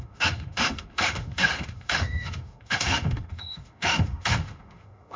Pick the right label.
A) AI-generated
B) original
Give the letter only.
A